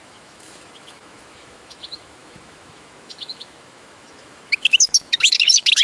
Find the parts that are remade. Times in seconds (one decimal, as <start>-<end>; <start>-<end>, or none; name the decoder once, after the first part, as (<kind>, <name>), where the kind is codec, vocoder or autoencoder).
0.0-5.8 (autoencoder, DAC-VAE)